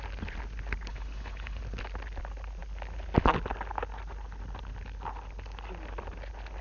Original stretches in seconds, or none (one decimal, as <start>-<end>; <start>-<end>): 0.0-0.9; 1.6-6.6